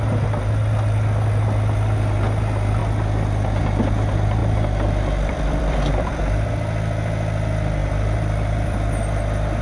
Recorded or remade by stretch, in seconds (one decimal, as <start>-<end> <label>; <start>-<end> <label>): 0.0-4.4 recorded; 4.4-6.2 remade; 6.2-7.8 recorded; 7.8-8.9 remade; 8.9-9.6 recorded